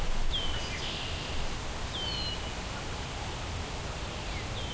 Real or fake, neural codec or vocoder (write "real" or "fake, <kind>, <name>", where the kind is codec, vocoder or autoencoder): real